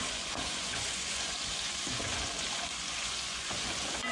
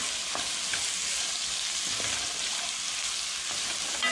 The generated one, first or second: first